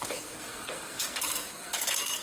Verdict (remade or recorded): remade